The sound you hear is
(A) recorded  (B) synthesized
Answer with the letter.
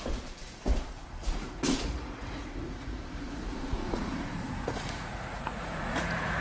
B